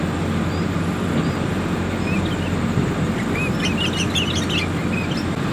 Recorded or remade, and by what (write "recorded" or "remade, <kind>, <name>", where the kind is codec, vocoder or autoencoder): recorded